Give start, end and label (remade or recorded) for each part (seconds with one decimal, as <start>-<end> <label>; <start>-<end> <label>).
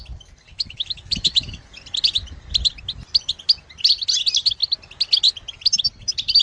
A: 0.0-0.5 recorded; 0.5-1.6 remade; 1.6-6.4 recorded